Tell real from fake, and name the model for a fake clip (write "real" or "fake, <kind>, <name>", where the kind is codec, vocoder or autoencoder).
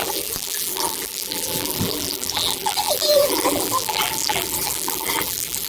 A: fake, vocoder, BigVGAN v2